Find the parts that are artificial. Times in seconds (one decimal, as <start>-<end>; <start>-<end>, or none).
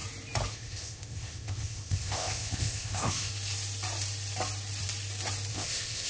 0.5-3.3; 5.5-6.1